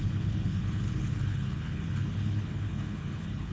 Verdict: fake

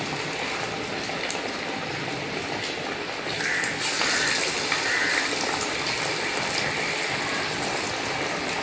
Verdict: real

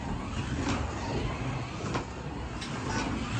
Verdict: real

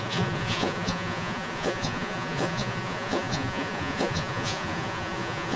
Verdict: fake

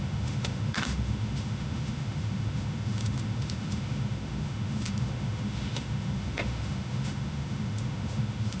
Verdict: fake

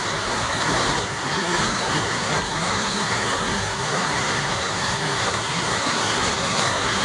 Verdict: fake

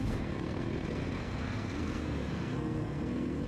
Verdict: fake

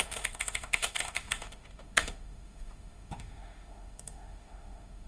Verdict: fake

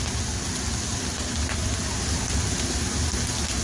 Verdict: real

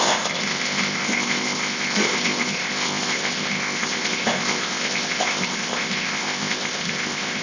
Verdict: fake